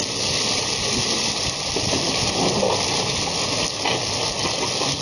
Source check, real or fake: real